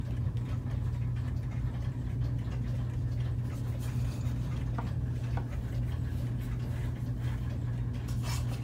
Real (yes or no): yes